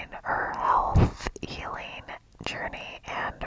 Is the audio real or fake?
real